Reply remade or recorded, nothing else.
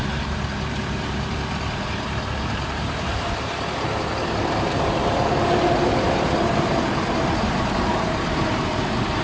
remade